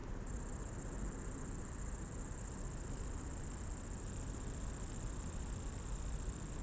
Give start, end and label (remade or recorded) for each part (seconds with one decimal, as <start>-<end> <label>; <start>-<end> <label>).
0.0-6.6 recorded

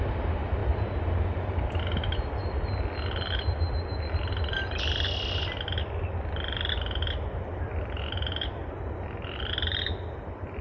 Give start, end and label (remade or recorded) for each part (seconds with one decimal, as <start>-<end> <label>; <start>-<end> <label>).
0.0-10.6 recorded